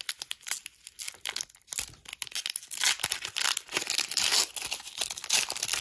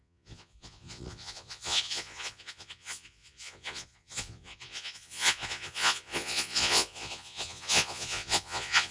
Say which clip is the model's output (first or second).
second